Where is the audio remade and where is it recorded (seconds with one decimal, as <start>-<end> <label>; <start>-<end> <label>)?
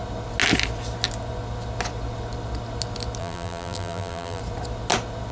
0.0-3.2 recorded; 3.2-4.4 remade; 4.4-5.3 recorded